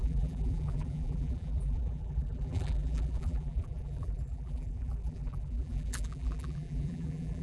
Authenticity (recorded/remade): remade